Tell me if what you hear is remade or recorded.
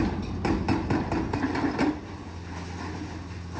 recorded